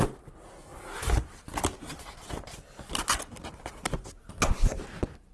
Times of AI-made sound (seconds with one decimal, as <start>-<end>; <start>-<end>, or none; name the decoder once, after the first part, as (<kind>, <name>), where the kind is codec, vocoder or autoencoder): none